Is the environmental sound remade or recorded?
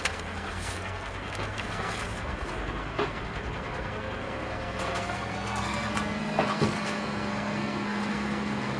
remade